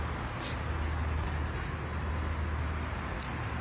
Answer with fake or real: real